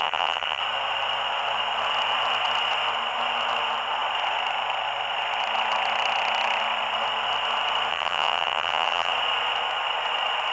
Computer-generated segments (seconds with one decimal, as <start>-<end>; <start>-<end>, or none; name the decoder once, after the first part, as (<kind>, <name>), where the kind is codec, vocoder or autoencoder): 0.0-0.6 (vocoder, HiFi-GAN); 7.9-9.1